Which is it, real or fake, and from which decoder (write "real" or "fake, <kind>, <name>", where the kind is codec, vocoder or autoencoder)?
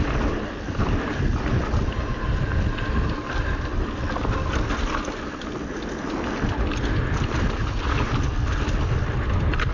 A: real